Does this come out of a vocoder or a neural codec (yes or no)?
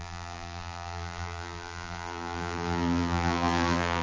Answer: yes